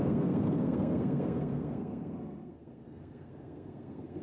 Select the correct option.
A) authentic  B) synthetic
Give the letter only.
B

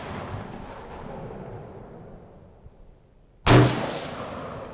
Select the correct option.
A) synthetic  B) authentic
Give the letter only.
B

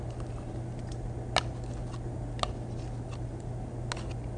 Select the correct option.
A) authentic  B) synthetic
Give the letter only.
A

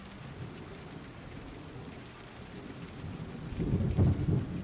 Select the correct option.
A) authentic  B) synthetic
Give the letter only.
A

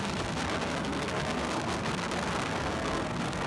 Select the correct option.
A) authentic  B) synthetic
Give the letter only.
B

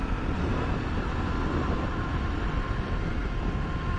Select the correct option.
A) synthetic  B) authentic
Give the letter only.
B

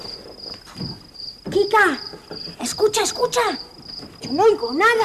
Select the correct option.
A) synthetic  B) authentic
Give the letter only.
B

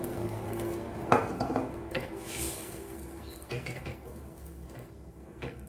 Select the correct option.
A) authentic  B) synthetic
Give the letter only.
B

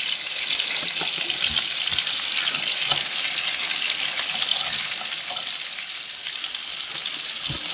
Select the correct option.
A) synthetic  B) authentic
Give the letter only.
B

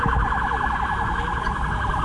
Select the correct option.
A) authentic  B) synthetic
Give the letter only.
A